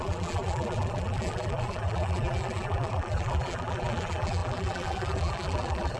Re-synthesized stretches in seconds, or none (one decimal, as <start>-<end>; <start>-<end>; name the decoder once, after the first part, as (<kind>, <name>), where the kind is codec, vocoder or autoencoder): 0.0-6.0 (vocoder, BigVGAN v2)